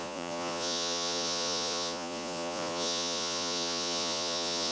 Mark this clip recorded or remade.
remade